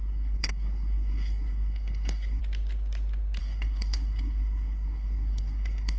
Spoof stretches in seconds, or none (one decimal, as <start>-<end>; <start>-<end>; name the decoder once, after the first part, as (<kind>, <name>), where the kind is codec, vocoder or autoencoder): 0.0-2.4 (codec, SNAC); 3.4-6.0